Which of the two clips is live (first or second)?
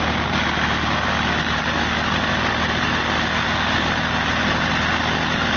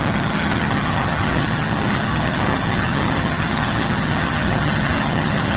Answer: first